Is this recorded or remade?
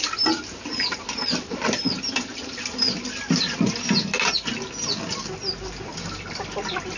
recorded